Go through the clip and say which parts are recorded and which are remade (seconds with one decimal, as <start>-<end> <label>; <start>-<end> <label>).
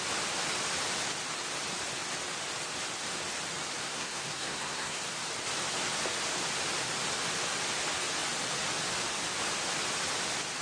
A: 0.0-3.8 recorded; 3.8-5.0 remade; 5.0-10.6 recorded